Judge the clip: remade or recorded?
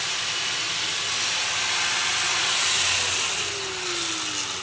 recorded